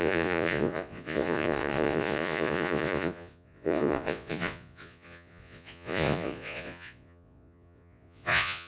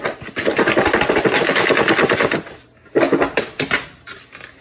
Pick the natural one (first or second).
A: second